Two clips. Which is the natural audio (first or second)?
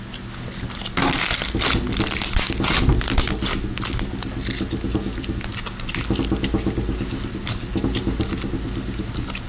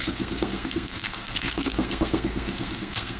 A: first